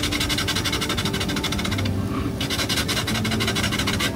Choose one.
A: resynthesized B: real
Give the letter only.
B